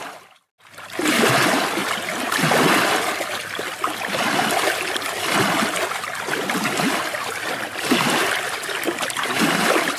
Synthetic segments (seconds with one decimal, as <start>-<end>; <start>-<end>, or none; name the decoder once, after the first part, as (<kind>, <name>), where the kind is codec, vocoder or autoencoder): none